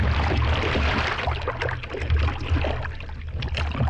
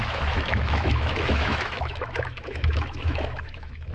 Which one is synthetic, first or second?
second